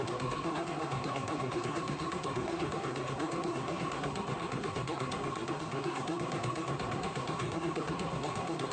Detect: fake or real fake